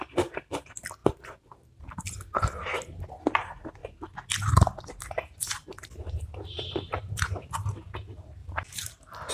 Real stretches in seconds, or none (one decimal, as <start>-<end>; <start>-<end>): 0.0-8.4